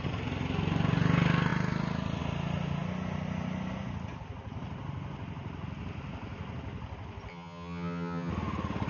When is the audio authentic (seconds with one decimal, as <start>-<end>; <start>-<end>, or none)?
0.0-7.3; 8.3-8.9